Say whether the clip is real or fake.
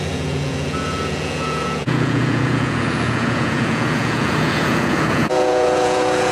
fake